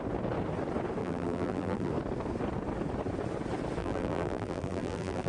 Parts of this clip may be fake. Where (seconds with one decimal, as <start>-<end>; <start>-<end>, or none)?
1.0-1.9; 3.8-5.3